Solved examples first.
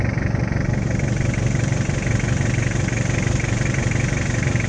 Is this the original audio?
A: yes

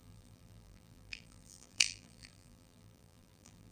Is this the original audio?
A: no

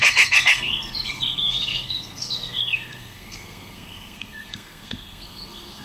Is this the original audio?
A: no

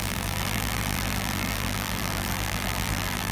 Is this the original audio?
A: no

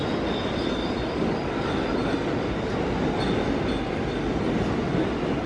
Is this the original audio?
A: yes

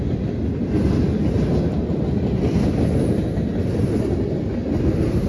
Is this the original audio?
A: yes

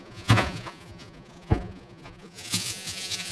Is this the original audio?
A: no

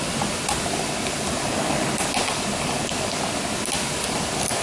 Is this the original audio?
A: yes